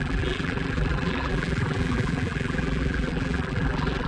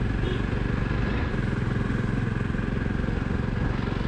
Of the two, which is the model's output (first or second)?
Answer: first